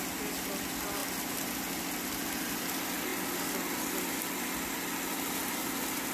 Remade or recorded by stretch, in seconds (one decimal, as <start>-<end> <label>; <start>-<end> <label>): 0.0-6.1 recorded